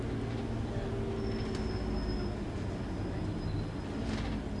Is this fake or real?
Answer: real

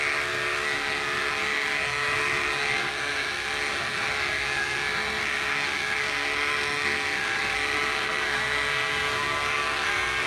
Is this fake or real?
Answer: fake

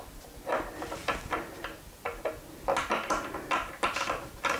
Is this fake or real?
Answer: real